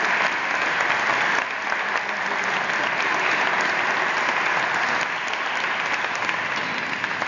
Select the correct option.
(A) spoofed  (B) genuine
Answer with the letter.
B